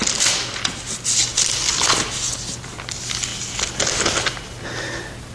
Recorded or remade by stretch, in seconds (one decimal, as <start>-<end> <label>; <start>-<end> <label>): 0.0-5.3 recorded